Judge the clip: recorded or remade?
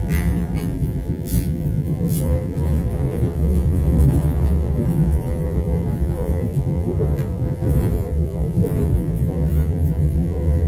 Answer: remade